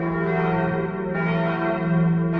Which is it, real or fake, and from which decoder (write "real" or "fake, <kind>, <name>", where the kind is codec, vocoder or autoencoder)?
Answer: real